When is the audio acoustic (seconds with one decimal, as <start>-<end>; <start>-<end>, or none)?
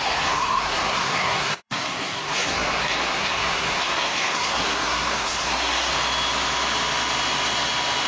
5.9-8.1